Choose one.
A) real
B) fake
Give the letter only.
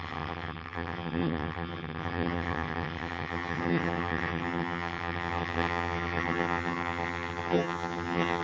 B